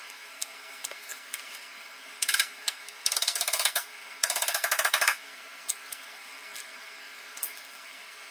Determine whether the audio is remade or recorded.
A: remade